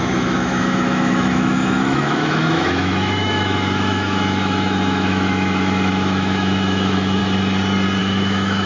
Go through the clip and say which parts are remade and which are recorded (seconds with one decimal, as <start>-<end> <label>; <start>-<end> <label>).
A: 0.0-7.2 remade; 7.2-8.0 recorded; 8.0-8.7 remade